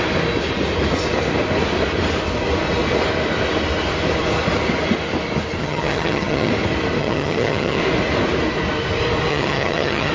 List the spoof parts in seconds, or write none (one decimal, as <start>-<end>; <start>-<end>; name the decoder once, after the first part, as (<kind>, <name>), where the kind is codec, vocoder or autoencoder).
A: 5.6-6.5 (vocoder, HiFi-GAN); 7.0-7.8; 9.3-10.1

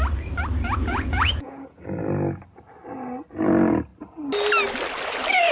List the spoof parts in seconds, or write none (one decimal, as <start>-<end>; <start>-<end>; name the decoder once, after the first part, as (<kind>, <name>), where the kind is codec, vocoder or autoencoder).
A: 0.8-1.8 (vocoder, Vocos)

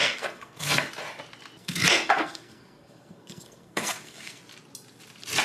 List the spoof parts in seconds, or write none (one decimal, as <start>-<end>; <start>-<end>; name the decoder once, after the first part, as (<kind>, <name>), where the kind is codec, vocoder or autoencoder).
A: 0.0-0.9 (codec, SNAC); 1.6-4.4

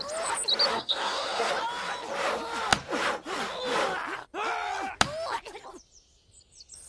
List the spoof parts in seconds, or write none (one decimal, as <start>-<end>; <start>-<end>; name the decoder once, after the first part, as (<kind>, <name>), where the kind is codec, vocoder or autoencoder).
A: 0.7-1.5 (codec, SNAC)

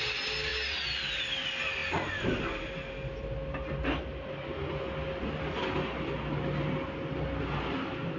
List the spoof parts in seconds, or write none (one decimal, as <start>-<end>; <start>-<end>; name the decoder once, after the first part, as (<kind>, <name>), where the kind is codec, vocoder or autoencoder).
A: none